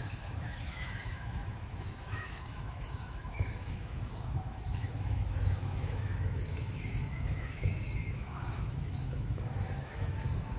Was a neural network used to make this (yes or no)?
yes